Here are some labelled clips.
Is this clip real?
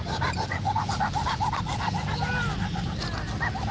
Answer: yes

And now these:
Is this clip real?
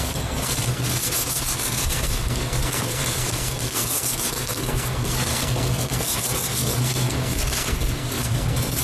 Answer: no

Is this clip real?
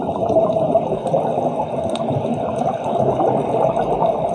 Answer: yes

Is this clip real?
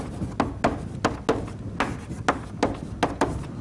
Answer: yes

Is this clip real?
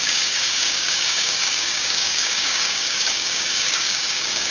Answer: no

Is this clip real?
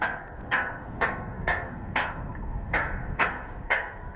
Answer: no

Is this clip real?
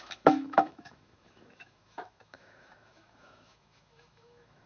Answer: no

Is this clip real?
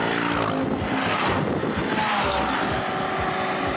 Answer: yes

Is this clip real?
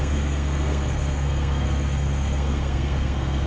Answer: no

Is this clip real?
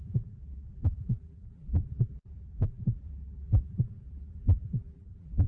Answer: no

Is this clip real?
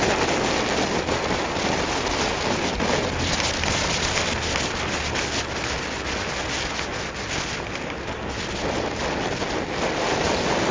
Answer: yes